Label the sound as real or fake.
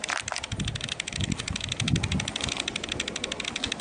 real